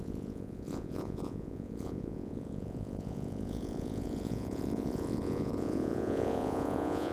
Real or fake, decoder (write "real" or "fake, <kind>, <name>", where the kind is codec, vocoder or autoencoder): fake, vocoder, Vocos